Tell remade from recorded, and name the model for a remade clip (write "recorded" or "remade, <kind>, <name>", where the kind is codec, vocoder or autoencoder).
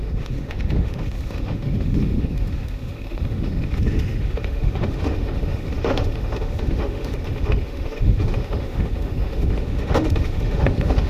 remade, autoencoder, DAC-VAE